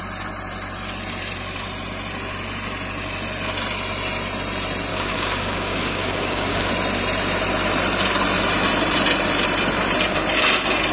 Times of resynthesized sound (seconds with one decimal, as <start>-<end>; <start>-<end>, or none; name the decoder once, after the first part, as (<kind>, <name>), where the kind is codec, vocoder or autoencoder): 4.9-6.7 (codec, DAC)